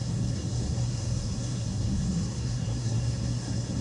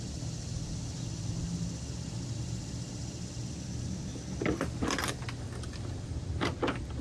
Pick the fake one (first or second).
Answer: first